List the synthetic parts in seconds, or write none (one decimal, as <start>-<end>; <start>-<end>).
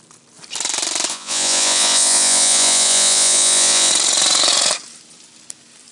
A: 1.1-3.9